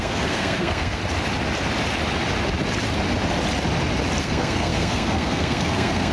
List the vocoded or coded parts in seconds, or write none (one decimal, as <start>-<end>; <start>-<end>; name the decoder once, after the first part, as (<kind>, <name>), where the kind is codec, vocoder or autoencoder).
0.0-1.0 (codec, SNAC); 4.2-6.1